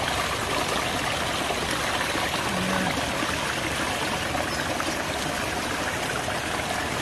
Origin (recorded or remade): recorded